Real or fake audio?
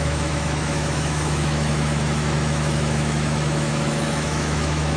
fake